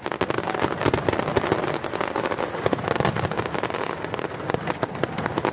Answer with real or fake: real